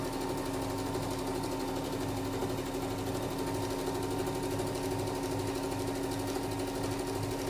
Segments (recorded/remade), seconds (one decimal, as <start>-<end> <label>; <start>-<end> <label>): 0.0-7.5 recorded